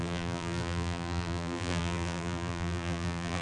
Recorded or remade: remade